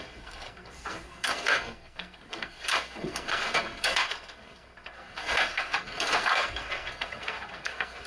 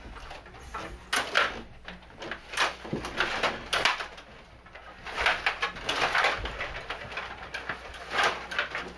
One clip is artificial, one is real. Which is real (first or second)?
second